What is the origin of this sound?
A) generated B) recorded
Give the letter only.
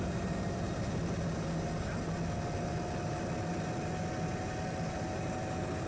B